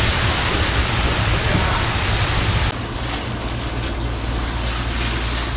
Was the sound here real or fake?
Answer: real